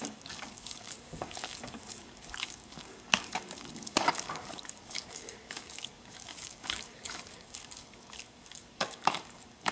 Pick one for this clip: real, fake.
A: fake